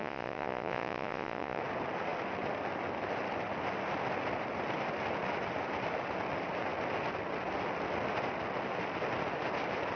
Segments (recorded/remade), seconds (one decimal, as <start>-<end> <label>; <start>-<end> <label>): 0.0-1.6 remade; 1.6-10.0 recorded

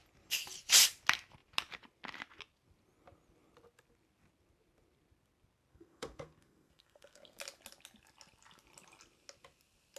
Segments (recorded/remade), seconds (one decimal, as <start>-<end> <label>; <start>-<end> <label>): 0.0-5.7 recorded; 5.7-7.4 remade; 7.4-10.0 recorded

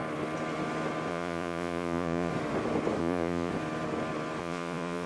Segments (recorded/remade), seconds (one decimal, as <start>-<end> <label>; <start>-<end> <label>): 0.0-1.1 recorded; 1.1-2.3 remade; 2.3-3.0 recorded; 3.0-3.5 remade; 3.5-4.4 recorded; 4.4-5.1 remade

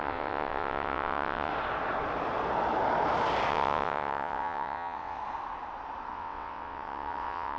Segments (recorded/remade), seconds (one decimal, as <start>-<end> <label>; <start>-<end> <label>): 0.0-1.5 remade; 1.5-3.5 recorded; 3.5-5.2 remade; 5.2-6.1 recorded; 6.1-7.6 remade

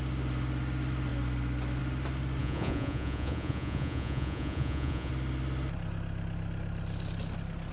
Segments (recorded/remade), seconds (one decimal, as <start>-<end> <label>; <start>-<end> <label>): 0.0-2.4 recorded; 2.4-5.1 remade; 5.1-7.7 recorded

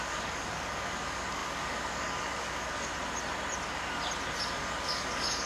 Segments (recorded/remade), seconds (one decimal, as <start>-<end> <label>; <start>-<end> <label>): 0.0-2.9 remade; 2.9-4.6 recorded; 4.6-5.5 remade